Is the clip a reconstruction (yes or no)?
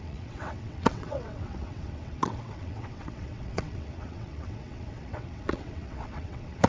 yes